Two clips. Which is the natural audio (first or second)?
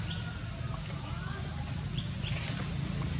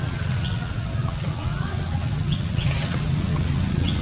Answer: first